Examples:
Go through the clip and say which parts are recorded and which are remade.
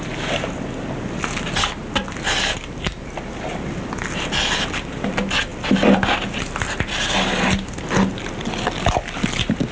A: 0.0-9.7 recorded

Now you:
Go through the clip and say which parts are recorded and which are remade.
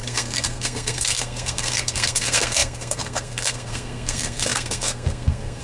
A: 0.0-5.6 remade